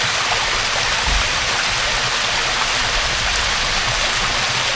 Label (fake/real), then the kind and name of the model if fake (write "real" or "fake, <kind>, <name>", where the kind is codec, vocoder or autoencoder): real